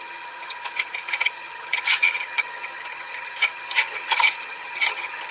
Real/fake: fake